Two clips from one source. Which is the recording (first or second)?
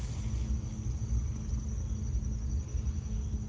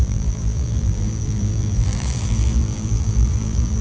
first